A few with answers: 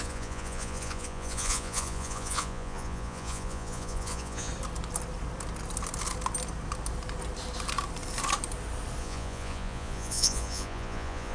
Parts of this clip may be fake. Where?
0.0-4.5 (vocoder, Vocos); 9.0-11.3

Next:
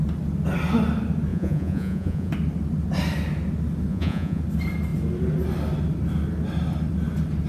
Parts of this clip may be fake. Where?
1.3-2.3 (vocoder, Vocos); 3.9-4.4